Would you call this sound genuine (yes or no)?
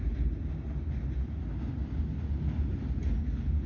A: yes